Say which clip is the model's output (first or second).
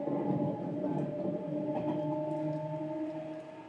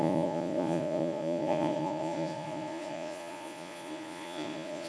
second